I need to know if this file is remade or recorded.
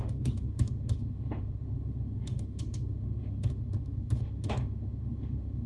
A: remade